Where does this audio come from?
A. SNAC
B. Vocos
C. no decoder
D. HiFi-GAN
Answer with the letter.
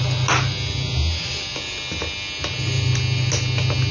C